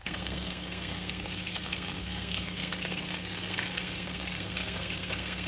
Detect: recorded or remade remade